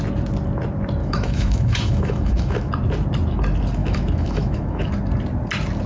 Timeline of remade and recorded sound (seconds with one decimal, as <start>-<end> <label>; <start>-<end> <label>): 0.0-1.0 recorded; 1.0-2.7 remade; 2.7-3.8 recorded; 3.8-4.9 remade; 4.9-5.9 recorded